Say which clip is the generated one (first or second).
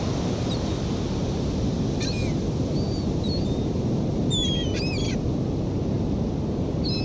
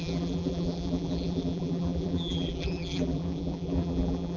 second